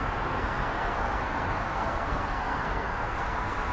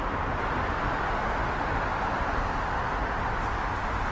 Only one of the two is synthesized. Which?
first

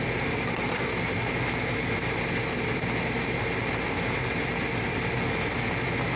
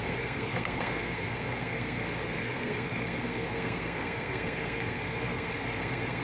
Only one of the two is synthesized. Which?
second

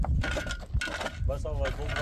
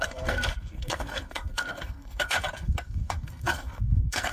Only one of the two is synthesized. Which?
second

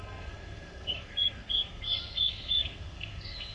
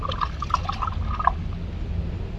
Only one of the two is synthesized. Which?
first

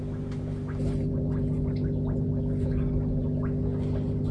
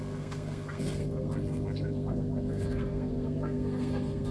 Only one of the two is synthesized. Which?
second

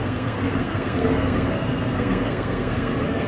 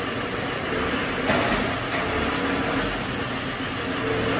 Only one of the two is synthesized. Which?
first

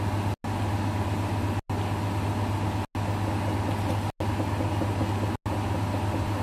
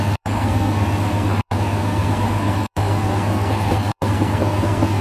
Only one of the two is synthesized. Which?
second